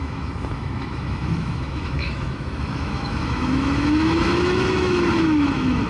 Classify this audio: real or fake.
fake